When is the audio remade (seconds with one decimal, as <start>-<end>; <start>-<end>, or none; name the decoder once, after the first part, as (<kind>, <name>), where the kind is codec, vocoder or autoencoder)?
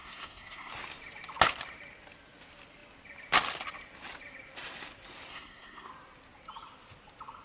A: 0.0-0.7 (codec, SNAC); 5.3-5.9